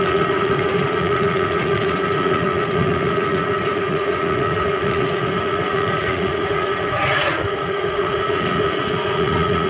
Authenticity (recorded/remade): remade